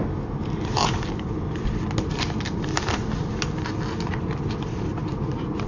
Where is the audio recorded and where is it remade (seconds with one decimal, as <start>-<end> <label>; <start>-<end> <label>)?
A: 0.0-2.5 recorded; 2.5-3.0 remade; 3.0-4.8 recorded; 4.8-5.7 remade